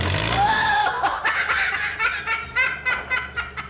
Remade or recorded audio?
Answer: recorded